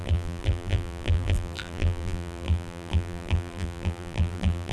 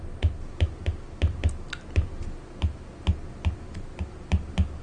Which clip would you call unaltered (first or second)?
second